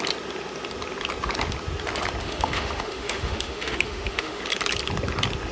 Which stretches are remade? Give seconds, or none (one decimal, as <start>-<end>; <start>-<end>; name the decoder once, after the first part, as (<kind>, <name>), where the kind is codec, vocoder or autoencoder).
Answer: 2.2-4.4 (autoencoder, DAC-VAE)